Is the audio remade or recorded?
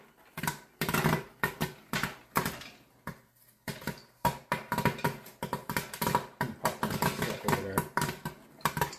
recorded